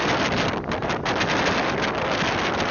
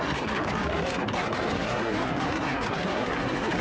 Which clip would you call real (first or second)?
first